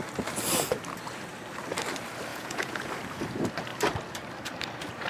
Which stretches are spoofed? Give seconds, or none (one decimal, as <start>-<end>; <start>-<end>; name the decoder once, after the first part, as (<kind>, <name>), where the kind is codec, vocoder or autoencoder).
2.3-2.9 (vocoder, Vocos)